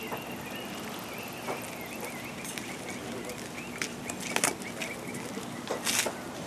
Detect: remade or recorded recorded